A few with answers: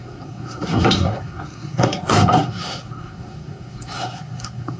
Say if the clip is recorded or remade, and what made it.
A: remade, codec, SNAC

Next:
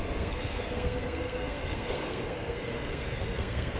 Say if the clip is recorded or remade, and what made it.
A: remade, codec, SNAC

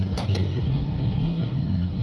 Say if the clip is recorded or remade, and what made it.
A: remade, codec, SNAC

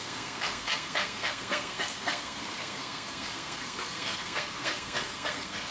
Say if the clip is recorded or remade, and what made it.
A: remade, codec, SNAC